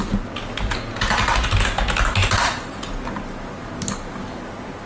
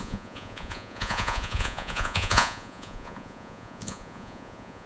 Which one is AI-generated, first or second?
second